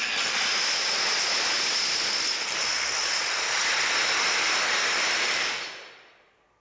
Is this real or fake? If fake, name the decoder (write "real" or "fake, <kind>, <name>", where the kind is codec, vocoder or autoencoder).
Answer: real